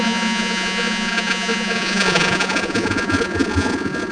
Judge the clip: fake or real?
fake